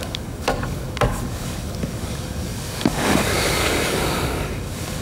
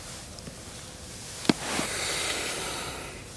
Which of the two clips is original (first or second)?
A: second